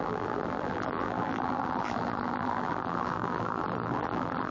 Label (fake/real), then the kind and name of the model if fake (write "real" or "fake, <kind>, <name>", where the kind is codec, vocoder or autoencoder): fake, vocoder, BigVGAN v2